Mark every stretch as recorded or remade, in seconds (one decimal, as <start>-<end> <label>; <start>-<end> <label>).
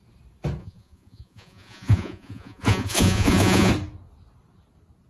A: 0.0-0.6 recorded; 0.6-3.7 remade; 3.7-5.1 recorded